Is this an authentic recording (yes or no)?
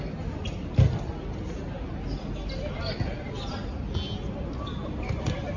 yes